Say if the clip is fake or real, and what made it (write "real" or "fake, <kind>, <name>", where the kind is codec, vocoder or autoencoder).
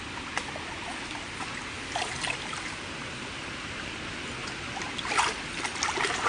real